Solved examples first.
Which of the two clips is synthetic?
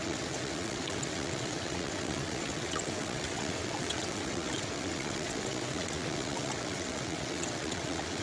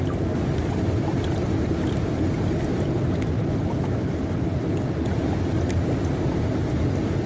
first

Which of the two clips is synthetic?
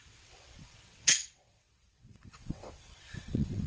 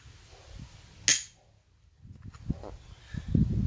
first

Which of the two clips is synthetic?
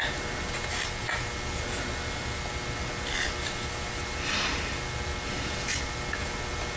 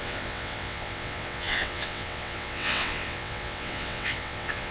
second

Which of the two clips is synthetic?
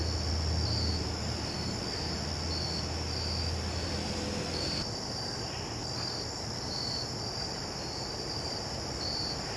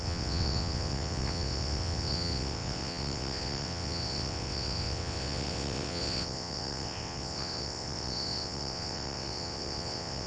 second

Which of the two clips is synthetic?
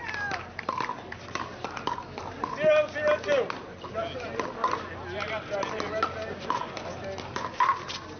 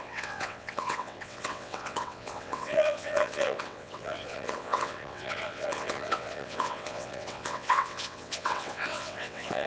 second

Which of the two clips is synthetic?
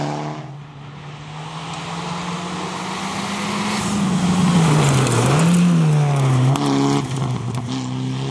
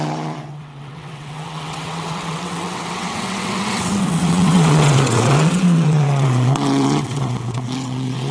second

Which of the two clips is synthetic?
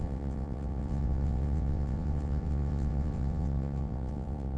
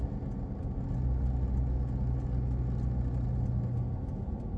first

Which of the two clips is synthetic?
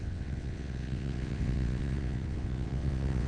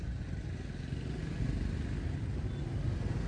first